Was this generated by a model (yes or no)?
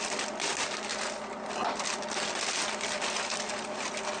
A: no